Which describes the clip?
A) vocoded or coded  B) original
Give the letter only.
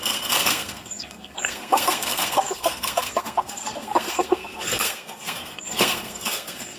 A